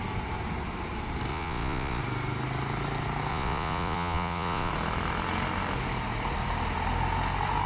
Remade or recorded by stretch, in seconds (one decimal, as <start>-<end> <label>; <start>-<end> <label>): 0.0-1.3 recorded; 1.3-2.0 remade; 2.0-3.3 recorded; 3.3-4.7 remade; 4.7-7.7 recorded